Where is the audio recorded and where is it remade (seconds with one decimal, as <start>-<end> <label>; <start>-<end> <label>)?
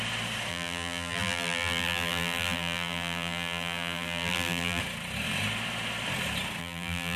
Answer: 0.0-0.5 recorded; 0.5-4.8 remade; 4.8-6.6 recorded; 6.6-7.2 remade